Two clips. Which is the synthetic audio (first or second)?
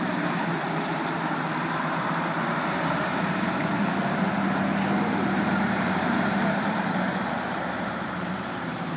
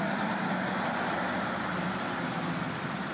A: first